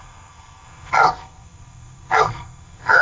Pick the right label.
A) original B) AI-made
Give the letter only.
B